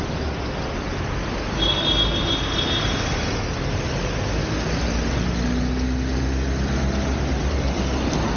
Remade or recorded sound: recorded